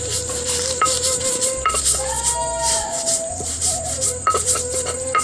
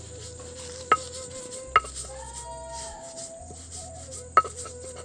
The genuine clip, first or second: second